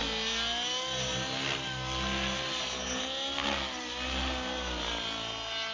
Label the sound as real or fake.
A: real